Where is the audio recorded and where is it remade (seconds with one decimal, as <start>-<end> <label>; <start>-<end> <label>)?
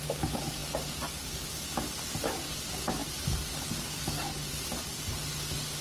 0.0-5.8 recorded